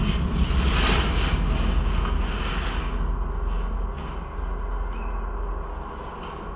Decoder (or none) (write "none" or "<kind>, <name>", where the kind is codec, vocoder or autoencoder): none